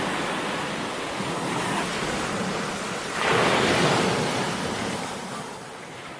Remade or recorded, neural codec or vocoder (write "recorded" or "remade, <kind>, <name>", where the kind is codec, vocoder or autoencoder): recorded